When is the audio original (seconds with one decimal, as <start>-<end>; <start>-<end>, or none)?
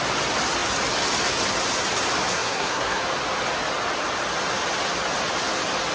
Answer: 0.0-2.3; 3.0-5.9